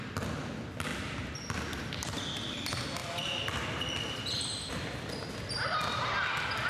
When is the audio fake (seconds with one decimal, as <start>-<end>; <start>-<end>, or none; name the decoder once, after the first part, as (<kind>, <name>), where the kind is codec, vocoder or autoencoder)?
none